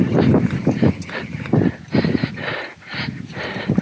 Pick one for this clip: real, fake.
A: real